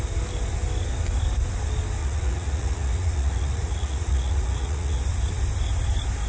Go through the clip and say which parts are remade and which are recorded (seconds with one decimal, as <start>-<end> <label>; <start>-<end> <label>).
0.0-2.0 recorded; 2.0-5.0 remade; 5.0-6.3 recorded